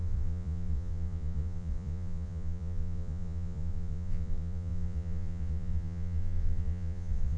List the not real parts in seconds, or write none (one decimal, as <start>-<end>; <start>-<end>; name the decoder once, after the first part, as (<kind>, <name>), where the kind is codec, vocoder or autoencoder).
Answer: 0.0-7.4 (vocoder, Vocos)